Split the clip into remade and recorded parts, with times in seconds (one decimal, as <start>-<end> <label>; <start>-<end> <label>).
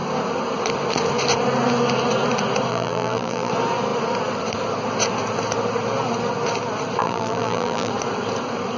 0.0-2.7 recorded; 2.7-3.5 remade; 3.5-7.0 recorded; 7.0-7.9 remade; 7.9-8.8 recorded